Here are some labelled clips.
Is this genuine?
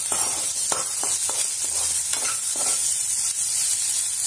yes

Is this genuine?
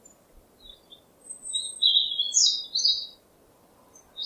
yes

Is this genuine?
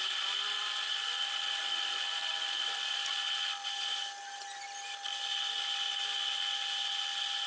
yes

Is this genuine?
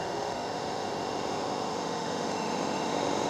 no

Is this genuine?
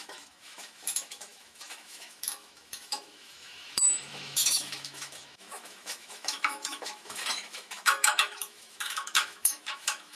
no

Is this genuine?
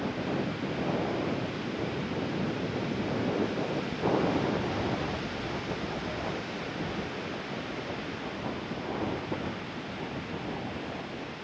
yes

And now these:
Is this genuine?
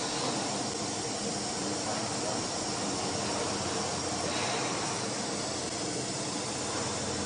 yes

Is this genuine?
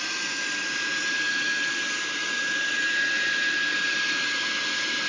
yes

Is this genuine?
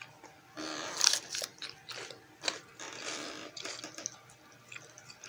yes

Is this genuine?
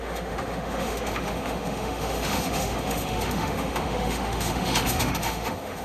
no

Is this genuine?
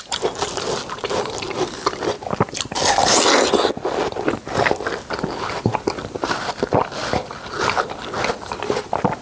yes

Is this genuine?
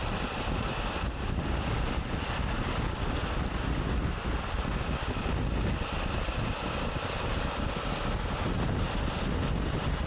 yes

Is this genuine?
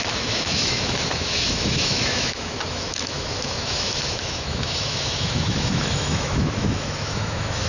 no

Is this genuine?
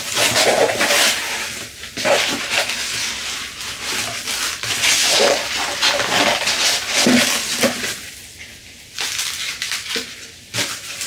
yes